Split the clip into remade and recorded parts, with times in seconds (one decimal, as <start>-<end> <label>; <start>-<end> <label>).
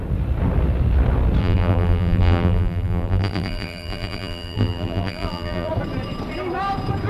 0.0-1.4 recorded; 1.4-5.7 remade; 5.7-7.1 recorded